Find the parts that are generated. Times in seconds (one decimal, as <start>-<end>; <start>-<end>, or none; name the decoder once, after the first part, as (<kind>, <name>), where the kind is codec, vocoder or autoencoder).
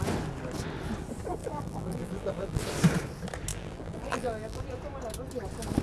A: 1.4-2.6 (vocoder, BigVGAN v2); 3.5-4.6